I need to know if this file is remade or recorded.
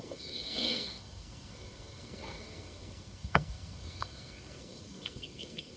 remade